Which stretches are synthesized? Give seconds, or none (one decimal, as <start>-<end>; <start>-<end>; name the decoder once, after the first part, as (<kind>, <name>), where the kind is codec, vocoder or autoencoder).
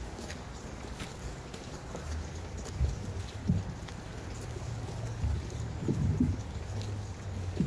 0.0-3.4 (codec, DAC); 4.5-7.7